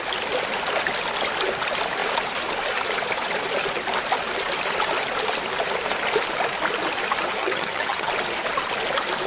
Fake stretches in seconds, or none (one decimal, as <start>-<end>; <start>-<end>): 7.4-8.1

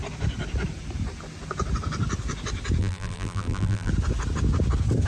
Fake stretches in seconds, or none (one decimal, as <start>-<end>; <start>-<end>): 2.8-3.9

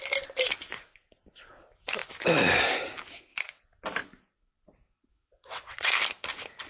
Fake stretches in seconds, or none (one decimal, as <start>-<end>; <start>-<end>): 3.3-3.8; 5.1-5.9

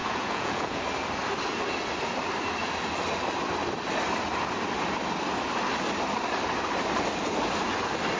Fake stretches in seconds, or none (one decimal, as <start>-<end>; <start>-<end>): 0.0-0.8

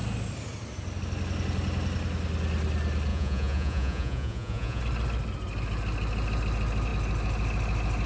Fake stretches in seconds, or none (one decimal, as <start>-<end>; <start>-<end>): 3.1-4.8

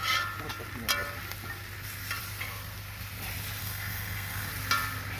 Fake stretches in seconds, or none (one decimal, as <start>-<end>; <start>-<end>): 3.6-4.5

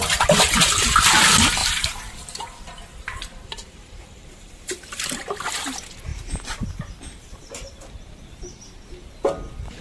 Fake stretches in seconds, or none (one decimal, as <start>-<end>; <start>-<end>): 1.6-5.5; 6.1-8.2

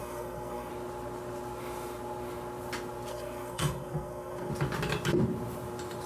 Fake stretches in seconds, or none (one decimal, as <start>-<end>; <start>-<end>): 0.0-0.7; 3.1-4.5